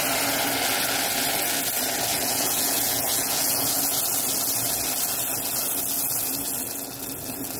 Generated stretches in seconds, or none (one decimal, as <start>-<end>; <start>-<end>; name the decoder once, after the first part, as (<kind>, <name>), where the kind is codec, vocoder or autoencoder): 2.1-3.8 (vocoder, Vocos)